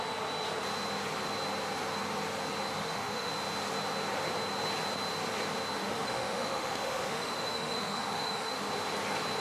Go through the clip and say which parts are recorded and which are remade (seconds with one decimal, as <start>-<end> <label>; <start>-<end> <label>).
0.0-2.8 recorded; 2.8-3.3 remade; 3.3-5.8 recorded; 5.8-8.7 remade; 8.7-9.4 recorded